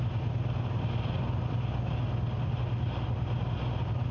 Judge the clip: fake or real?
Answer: real